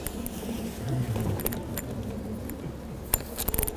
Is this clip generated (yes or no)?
no